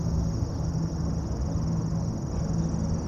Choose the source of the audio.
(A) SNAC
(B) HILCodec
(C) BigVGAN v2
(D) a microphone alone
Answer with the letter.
D